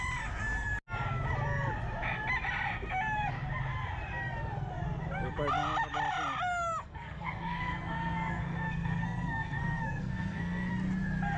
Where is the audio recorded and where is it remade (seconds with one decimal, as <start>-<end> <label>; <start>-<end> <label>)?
0.0-6.8 recorded; 6.8-10.7 remade; 10.7-11.4 recorded